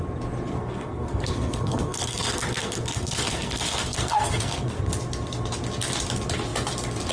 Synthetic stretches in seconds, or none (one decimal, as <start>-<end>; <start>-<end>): 0.5-4.8